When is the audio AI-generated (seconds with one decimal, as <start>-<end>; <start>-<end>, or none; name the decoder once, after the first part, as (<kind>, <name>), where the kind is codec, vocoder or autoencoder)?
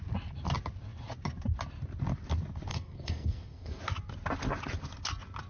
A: 2.7-3.8 (codec, SNAC)